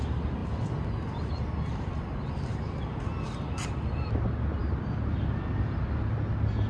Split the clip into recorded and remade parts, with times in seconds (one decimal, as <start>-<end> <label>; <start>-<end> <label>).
0.0-6.7 recorded